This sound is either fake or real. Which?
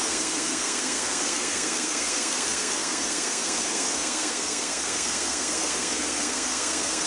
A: fake